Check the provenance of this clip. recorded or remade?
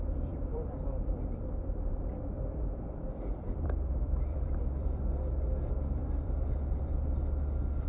remade